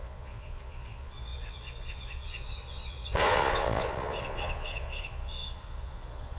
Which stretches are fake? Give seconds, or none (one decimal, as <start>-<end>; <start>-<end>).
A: 0.0-6.4